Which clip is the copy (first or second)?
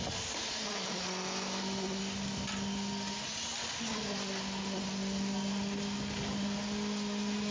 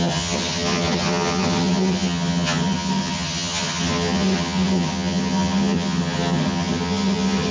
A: second